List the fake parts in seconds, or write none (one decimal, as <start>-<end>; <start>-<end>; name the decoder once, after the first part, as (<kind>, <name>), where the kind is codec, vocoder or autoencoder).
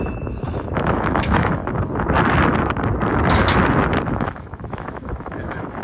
0.0-1.6 (autoencoder, DAC-VAE); 4.1-5.8